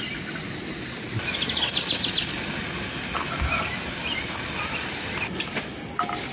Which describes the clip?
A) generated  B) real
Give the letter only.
B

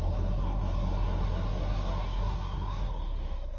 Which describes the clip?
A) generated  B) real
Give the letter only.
A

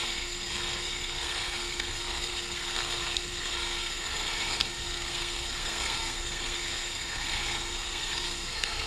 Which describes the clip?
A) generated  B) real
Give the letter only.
A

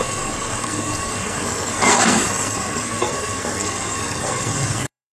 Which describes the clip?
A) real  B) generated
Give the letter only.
B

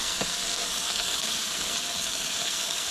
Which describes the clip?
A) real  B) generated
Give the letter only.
B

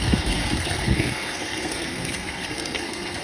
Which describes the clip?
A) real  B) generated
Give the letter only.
B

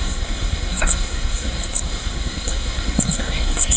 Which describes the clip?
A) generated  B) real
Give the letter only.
A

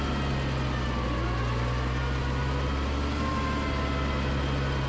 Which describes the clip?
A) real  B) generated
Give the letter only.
A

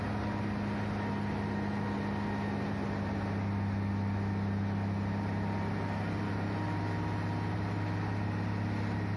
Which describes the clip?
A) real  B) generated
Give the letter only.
A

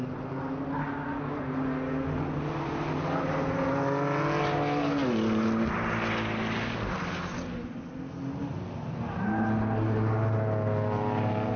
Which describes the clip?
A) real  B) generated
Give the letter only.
A